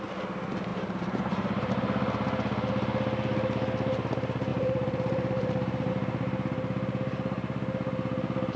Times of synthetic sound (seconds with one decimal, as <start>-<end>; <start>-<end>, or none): 0.7-1.7; 4.5-5.9